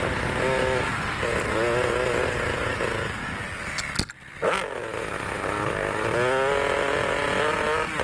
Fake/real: real